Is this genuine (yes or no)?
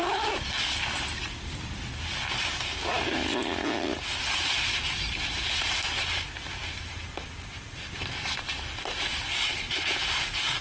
yes